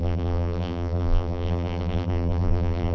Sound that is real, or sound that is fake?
fake